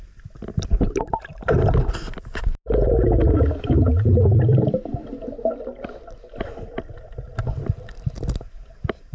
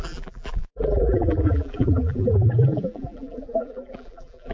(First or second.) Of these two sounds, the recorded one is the first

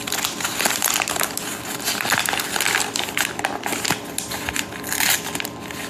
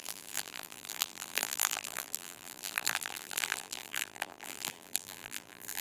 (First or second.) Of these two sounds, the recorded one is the first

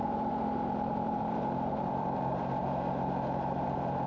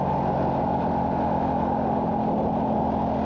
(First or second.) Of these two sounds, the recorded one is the second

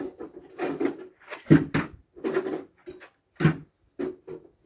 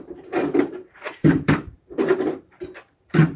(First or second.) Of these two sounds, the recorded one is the first